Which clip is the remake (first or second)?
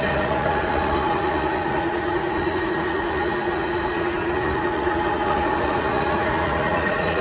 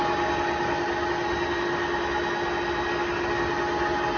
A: first